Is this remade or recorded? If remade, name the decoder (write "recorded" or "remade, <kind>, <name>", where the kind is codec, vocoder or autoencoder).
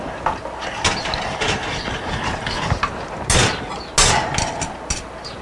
recorded